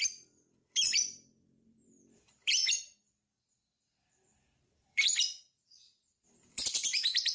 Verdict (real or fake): fake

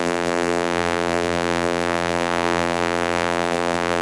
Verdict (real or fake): fake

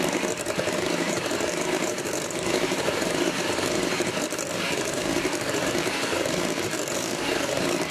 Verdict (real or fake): fake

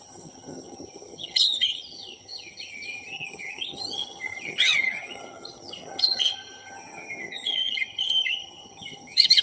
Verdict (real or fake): fake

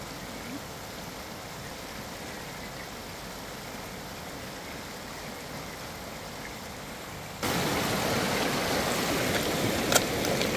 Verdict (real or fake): real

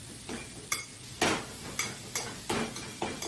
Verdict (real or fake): real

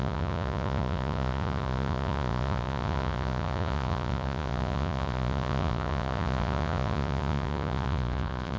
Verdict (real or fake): fake